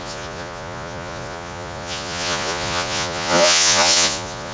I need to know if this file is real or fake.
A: fake